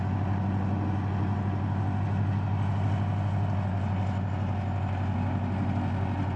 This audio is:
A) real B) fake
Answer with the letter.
A